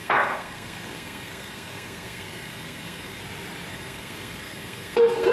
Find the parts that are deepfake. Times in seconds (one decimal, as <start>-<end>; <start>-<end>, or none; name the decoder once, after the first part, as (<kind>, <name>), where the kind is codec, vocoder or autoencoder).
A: 0.0-3.2 (codec, SNAC); 3.7-5.3